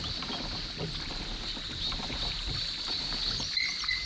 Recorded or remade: recorded